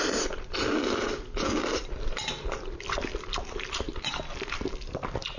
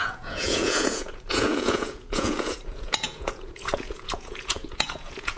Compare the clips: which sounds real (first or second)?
first